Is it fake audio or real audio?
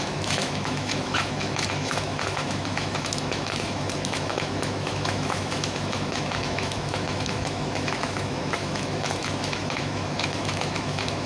fake